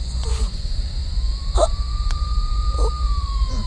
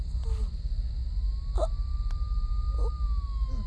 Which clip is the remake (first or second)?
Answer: first